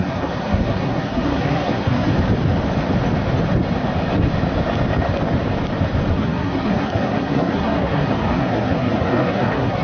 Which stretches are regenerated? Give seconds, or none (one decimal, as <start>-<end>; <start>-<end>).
0.0-2.1; 6.1-9.8